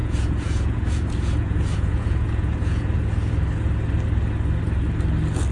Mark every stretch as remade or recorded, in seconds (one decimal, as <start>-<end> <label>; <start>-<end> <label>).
0.0-3.3 remade; 3.3-5.5 recorded